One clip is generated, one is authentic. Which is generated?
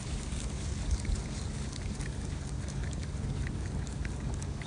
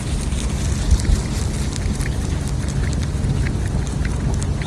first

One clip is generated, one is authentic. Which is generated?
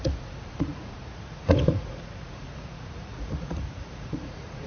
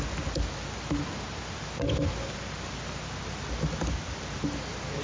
first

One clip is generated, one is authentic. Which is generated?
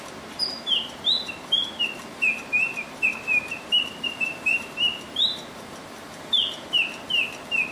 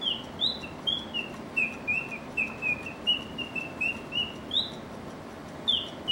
first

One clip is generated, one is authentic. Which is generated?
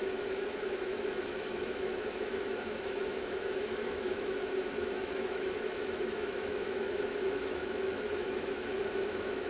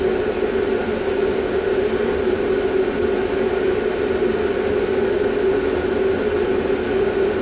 first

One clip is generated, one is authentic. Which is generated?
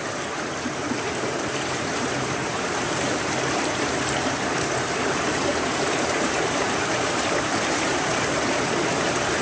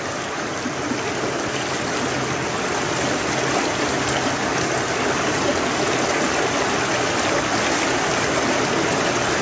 first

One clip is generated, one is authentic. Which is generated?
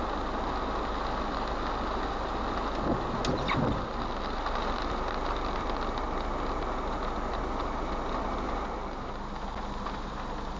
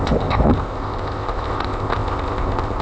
second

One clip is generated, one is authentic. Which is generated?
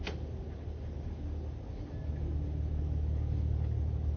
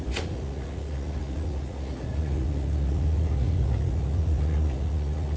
second